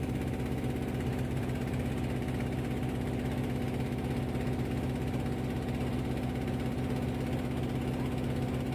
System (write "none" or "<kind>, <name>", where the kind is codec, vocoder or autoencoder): none